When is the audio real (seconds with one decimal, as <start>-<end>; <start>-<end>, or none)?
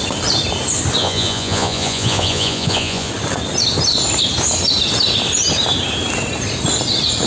0.0-1.0; 3.1-7.3